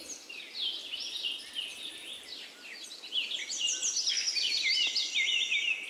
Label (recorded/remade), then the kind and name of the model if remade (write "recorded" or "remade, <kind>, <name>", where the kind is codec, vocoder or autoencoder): recorded